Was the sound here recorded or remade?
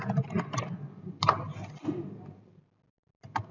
recorded